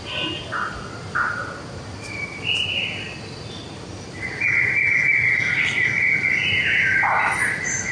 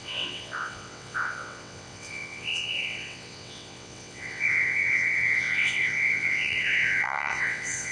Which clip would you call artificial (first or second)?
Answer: second